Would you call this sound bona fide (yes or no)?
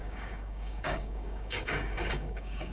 no